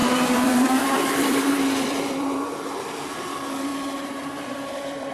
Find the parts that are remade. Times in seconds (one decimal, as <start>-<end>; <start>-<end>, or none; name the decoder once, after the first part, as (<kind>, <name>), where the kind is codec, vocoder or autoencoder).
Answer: 0.0-3.7 (vocoder, BigVGAN v2); 4.4-5.1